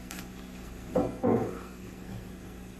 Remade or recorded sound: remade